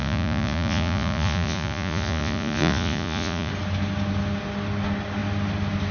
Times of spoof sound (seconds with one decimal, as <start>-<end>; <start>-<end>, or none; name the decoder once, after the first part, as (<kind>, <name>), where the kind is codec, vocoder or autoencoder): 0.0-3.5 (vocoder, Vocos)